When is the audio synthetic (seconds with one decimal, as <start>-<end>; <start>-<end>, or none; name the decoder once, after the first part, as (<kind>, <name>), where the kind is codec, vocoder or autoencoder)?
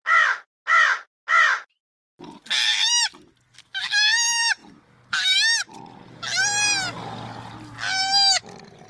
none